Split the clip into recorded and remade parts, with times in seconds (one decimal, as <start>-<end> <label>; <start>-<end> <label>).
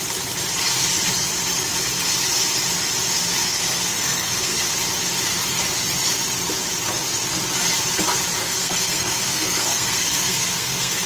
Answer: 0.0-3.4 recorded; 3.4-4.6 remade; 4.6-8.4 recorded; 8.4-11.1 remade